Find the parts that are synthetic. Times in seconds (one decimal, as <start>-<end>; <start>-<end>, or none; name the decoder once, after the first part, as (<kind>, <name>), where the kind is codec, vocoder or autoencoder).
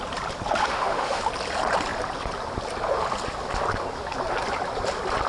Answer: 0.6-1.2 (autoencoder, DAC-VAE)